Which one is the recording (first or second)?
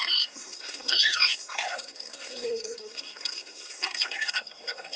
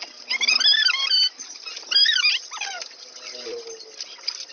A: second